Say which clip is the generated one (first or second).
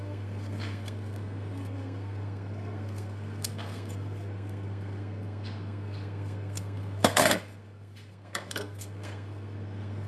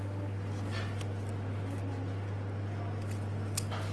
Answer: first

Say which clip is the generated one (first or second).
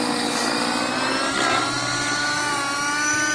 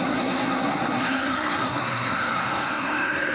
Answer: second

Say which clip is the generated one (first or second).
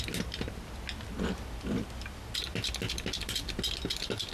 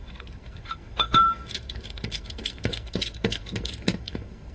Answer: second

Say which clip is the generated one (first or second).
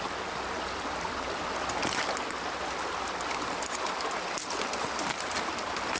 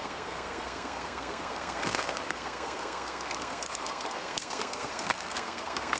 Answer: second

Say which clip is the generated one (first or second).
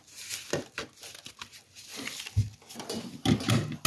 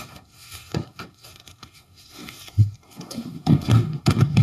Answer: second